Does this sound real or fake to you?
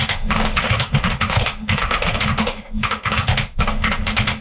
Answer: fake